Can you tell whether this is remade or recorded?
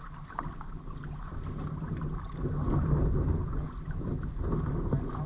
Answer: recorded